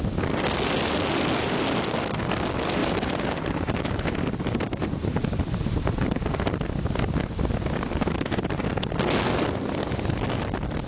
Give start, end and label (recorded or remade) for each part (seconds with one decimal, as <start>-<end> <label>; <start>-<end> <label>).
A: 0.0-2.8 recorded; 2.8-6.3 remade; 6.3-10.9 recorded